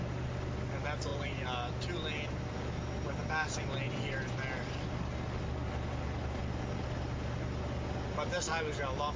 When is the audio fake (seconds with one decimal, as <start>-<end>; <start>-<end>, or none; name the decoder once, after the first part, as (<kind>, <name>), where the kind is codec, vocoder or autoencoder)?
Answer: none

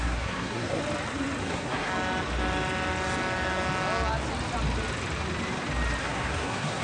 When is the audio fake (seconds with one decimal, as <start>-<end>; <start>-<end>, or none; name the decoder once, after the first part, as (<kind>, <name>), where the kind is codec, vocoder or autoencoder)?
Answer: 0.0-0.8 (codec, SNAC); 1.4-1.9; 6.0-6.8

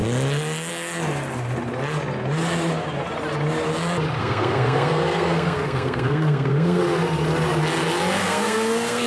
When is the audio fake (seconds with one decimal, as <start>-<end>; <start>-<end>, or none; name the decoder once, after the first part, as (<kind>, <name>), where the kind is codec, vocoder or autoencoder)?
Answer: 4.2-6.8 (codec, SNAC); 8.2-9.1

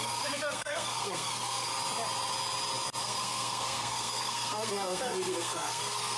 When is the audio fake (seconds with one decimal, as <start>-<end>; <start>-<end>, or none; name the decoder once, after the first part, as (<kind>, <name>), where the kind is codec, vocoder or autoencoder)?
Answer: 0.0-1.7 (codec, SNAC); 3.0-6.2